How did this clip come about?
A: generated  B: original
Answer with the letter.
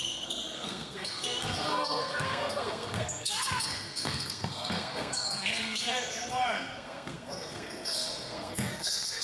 A